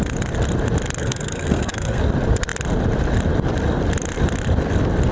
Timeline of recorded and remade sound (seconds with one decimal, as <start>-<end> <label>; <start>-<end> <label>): 0.0-1.0 recorded; 1.0-2.0 remade; 2.0-5.1 recorded